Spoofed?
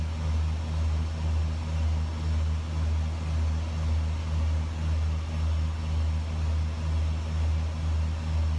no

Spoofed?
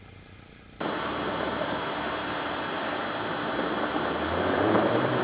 yes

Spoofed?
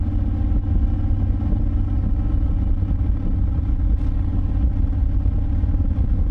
no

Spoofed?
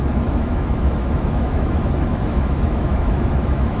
yes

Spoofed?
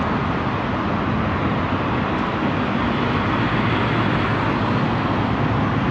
no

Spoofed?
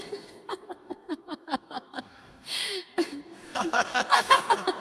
yes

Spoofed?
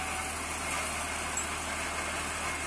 no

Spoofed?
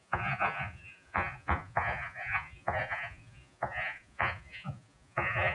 yes